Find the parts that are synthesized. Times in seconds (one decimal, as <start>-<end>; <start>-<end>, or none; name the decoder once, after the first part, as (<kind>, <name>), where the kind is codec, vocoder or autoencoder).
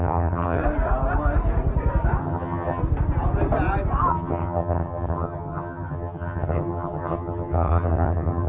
0.0-0.6 (vocoder, HiFi-GAN); 2.2-2.8; 4.1-8.5